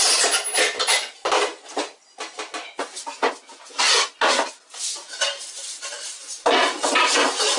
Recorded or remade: recorded